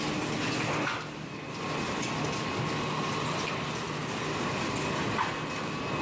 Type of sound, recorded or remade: recorded